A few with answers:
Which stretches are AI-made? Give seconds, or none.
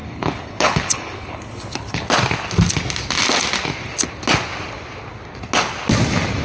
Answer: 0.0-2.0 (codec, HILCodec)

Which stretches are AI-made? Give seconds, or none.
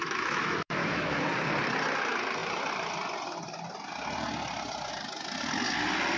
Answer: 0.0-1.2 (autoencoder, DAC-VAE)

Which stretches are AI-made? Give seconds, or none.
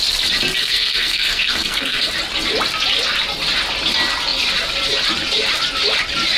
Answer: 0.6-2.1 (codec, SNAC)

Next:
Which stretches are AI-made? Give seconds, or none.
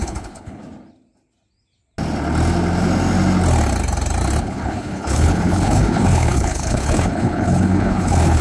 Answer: 0.0-0.6 (codec, HILCodec); 4.4-8.4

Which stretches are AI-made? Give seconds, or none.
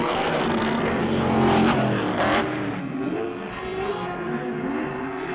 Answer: 0.0-1.0 (codec, SNAC); 2.8-5.3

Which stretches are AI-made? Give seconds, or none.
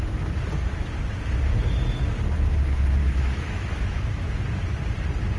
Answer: 3.0-4.3 (autoencoder, DAC-VAE)